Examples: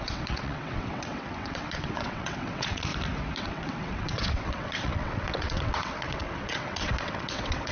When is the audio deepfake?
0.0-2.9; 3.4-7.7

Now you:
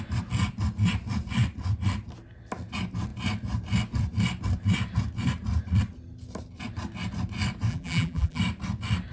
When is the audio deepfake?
7.7-8.4

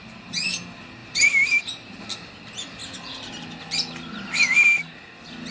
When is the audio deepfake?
0.0-0.5; 1.0-2.3

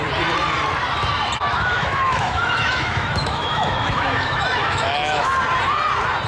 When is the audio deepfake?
1.5-5.3